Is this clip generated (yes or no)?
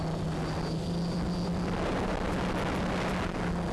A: no